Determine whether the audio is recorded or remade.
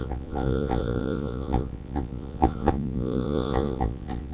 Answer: remade